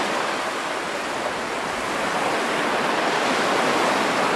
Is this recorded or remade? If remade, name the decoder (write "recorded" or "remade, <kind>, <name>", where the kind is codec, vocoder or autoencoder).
recorded